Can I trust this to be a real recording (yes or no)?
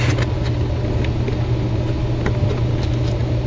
yes